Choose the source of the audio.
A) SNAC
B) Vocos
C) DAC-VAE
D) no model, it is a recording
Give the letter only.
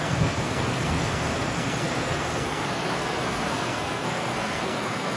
A